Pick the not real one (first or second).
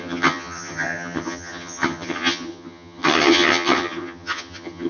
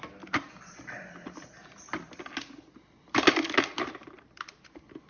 first